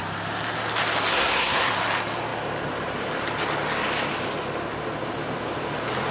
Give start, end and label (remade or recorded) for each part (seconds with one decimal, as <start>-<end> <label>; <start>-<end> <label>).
0.0-1.1 recorded; 1.1-1.7 remade; 1.7-6.1 recorded